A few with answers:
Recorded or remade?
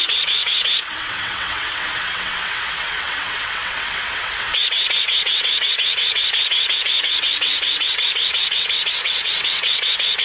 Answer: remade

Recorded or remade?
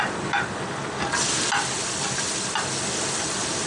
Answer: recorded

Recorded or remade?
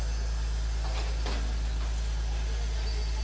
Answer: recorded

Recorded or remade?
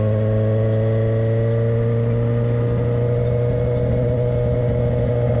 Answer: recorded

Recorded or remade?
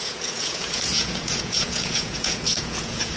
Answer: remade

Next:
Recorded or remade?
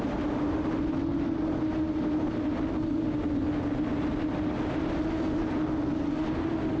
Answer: recorded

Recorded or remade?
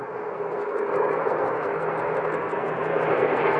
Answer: remade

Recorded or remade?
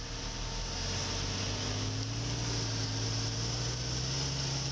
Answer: recorded